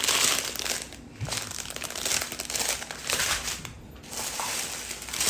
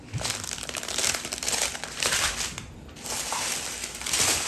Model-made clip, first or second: second